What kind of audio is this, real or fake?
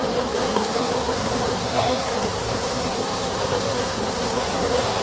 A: fake